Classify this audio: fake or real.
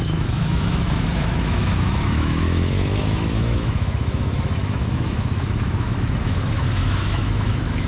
fake